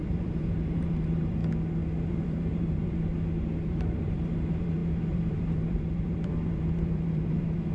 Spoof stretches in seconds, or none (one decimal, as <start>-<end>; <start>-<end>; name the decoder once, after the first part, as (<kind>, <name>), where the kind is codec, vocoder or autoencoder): 0.0-1.4 (vocoder, BigVGAN v2); 2.1-3.1; 3.7-7.7